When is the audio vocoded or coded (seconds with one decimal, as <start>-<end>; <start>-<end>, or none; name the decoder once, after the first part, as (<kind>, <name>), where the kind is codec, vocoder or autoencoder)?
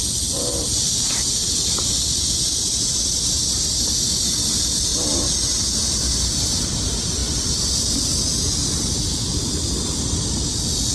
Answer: 0.0-1.2 (vocoder, BigVGAN v2); 4.9-6.0; 7.2-7.7